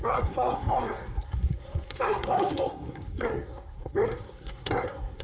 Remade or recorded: remade